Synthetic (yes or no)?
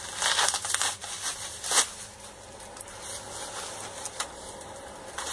no